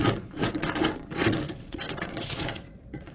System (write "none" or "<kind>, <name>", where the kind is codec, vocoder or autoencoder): vocoder, WaveNeXt